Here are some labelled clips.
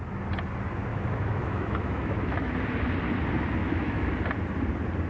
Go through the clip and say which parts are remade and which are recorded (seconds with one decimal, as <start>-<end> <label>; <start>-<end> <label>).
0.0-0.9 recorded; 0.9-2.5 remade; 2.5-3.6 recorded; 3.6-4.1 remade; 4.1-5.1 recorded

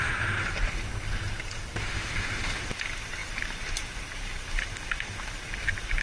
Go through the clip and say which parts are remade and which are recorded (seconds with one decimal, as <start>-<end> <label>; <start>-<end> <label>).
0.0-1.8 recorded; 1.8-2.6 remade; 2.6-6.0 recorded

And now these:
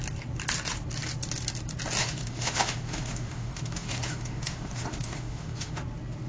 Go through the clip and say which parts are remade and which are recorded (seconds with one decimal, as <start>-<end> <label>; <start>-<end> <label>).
0.0-2.0 recorded; 2.0-5.8 remade; 5.8-6.3 recorded